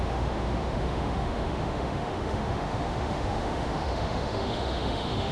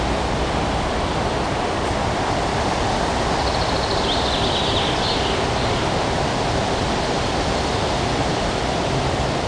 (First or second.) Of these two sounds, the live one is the second